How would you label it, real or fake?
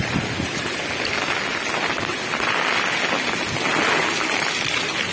real